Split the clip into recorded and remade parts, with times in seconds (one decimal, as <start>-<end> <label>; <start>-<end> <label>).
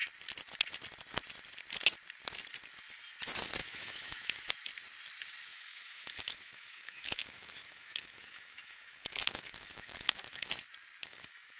0.0-3.6 recorded; 3.6-4.5 remade; 4.5-5.5 recorded; 5.5-10.5 remade; 10.5-11.0 recorded; 11.0-11.6 remade